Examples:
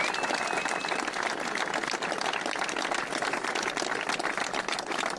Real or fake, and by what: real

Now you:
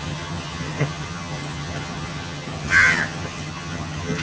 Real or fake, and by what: fake, vocoder, HiFi-GAN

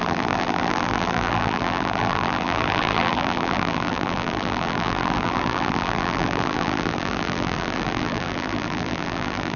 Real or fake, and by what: fake, vocoder, BigVGAN v2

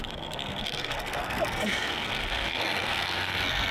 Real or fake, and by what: fake, codec, SNAC